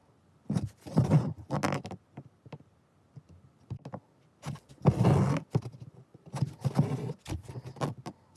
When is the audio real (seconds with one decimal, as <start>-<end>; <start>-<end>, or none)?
0.0-8.4